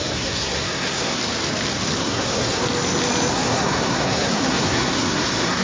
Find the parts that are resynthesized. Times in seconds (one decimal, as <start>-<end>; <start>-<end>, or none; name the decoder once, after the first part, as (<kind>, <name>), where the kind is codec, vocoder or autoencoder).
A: 0.0-1.2 (codec, SNAC); 2.0-2.6; 3.3-5.6